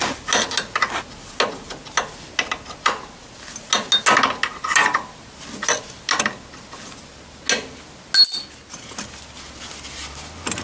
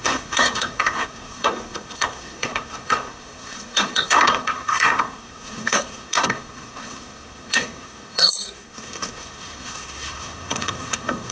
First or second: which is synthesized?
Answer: second